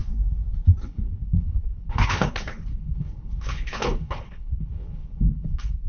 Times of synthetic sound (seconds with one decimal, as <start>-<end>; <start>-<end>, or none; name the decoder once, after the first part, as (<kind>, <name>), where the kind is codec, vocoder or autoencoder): 0.8-5.9 (codec, HILCodec)